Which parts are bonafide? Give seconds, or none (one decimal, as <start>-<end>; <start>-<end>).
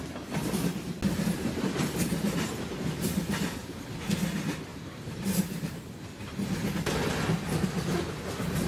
0.0-4.7; 5.9-8.7